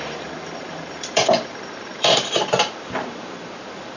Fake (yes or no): yes